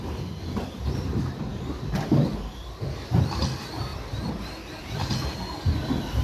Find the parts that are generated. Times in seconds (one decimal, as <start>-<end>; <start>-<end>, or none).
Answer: none